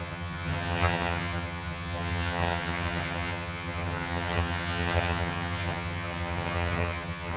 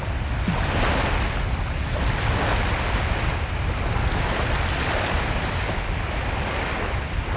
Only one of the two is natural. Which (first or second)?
second